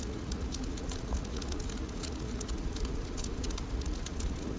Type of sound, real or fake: fake